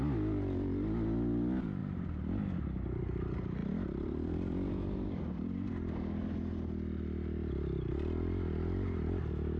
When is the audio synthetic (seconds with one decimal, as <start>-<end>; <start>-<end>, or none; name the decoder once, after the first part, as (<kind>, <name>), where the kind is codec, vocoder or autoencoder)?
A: 1.8-2.8 (vocoder, BigVGAN v2); 3.6-5.7